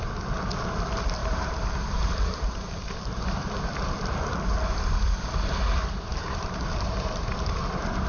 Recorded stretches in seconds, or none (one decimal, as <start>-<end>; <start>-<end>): 0.0-1.2; 3.5-6.1; 7.6-8.1